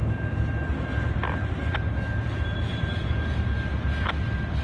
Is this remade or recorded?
remade